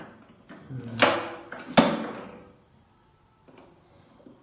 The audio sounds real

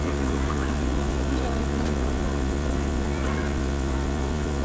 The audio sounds fake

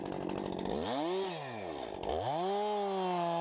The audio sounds real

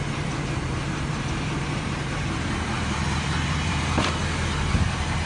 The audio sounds fake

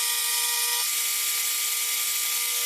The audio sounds real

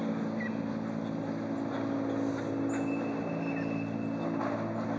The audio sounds real